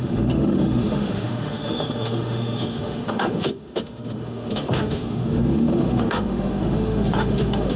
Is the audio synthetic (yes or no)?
yes